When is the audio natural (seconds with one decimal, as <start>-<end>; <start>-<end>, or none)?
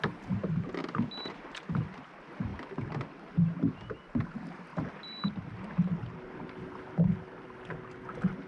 0.0-8.5